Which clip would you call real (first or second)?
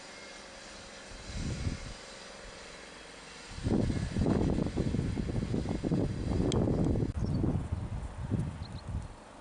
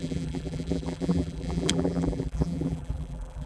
first